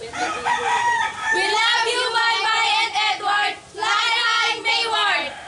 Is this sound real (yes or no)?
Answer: yes